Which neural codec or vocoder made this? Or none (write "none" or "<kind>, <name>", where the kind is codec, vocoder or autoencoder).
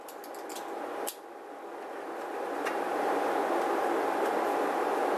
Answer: none